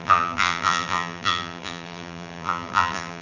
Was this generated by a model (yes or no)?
yes